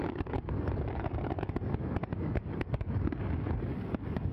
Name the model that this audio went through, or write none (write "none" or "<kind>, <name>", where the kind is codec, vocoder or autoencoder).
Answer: codec, DAC